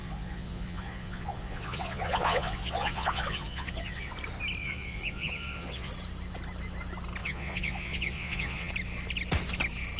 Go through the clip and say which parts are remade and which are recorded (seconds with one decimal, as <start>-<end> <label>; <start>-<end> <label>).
0.0-4.1 remade; 4.1-4.6 recorded; 4.6-5.9 remade; 5.9-7.2 recorded; 7.2-8.7 remade; 8.7-10.0 recorded